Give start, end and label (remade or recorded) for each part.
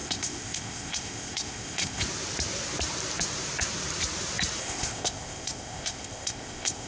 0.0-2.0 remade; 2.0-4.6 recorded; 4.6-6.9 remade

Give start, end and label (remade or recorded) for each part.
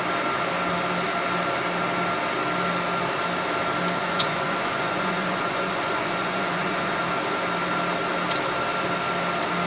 0.0-4.0 recorded; 4.0-7.0 remade; 7.0-9.7 recorded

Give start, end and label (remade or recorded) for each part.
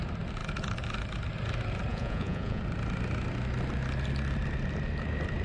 0.0-1.9 recorded; 1.9-2.6 remade; 2.6-5.4 recorded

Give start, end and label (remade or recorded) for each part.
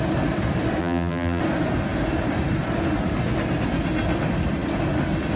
0.0-0.8 recorded; 0.8-1.4 remade; 1.4-5.4 recorded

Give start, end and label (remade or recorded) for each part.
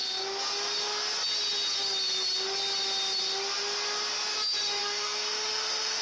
0.0-4.8 recorded; 4.8-6.0 remade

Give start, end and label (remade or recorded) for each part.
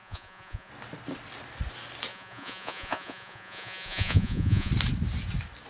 0.0-0.7 remade; 0.7-2.1 recorded; 2.1-4.7 remade; 4.7-5.7 recorded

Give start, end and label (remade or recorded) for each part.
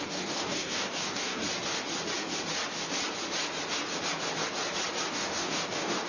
0.0-1.4 remade; 1.4-5.1 recorded; 5.1-6.1 remade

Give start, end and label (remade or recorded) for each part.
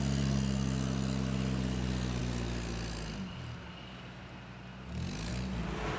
0.0-6.0 recorded